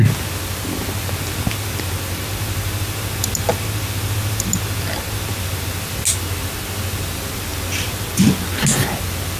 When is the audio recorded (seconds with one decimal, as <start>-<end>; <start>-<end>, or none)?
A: 0.0-9.4